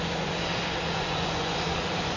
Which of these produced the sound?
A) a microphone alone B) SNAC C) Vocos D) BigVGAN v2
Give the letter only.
C